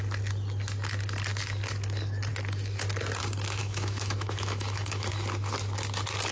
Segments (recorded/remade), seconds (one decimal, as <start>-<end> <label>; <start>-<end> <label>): 0.0-3.6 recorded; 3.6-5.1 remade; 5.1-6.3 recorded